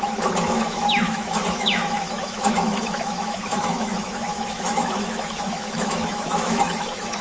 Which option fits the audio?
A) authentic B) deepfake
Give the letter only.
B